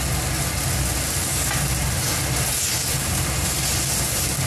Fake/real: real